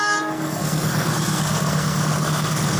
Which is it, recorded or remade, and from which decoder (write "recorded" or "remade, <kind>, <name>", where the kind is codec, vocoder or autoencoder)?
remade, codec, SNAC